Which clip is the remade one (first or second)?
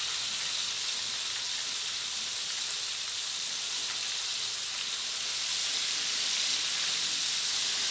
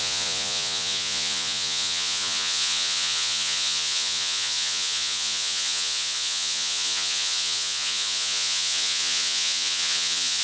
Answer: second